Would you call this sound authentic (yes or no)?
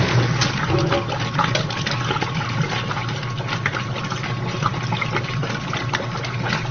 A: yes